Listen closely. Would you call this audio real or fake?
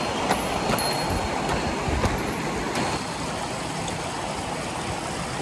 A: real